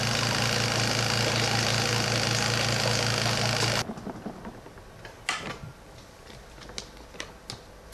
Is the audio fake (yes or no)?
no